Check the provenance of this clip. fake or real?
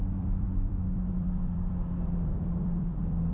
fake